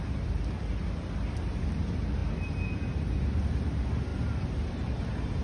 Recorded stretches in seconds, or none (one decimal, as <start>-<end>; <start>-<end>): 0.0-5.4